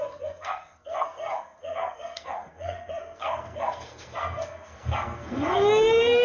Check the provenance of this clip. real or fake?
fake